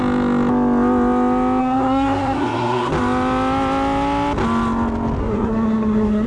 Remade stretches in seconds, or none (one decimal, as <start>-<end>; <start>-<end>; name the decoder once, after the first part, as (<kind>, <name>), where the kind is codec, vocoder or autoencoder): 1.6-2.9 (codec, SNAC); 5.2-6.3